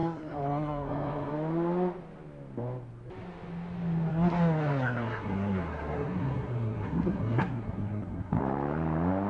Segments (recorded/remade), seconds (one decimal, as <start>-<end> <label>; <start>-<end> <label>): 0.0-1.3 remade; 1.3-4.1 recorded; 4.1-8.4 remade; 8.4-9.3 recorded